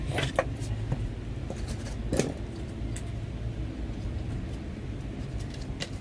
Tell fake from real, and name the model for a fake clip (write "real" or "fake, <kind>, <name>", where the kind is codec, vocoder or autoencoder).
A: real